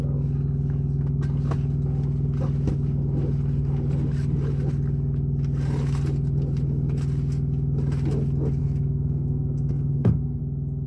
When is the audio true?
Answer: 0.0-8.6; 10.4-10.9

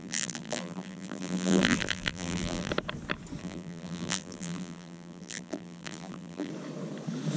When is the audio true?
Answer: 2.7-3.4; 6.5-7.4

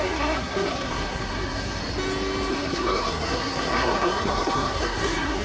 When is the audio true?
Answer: 1.8-2.5

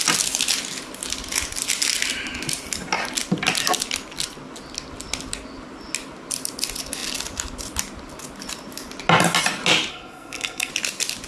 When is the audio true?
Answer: 0.0-9.9; 10.7-11.3

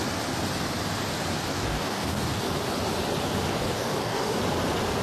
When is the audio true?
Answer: 0.0-1.5; 2.4-3.6; 4.4-5.0